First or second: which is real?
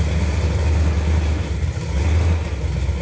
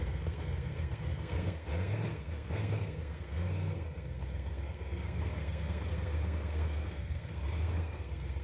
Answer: first